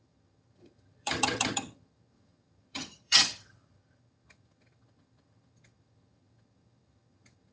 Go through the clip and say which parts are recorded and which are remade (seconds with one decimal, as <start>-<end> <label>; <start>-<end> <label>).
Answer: 0.0-7.5 remade